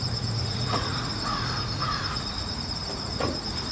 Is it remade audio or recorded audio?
remade